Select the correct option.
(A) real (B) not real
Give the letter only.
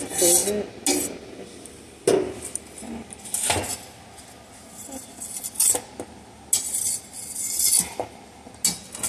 A